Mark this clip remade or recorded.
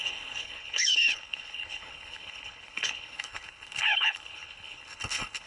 remade